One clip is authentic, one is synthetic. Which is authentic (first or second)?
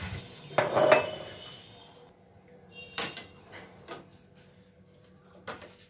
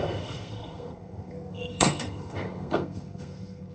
first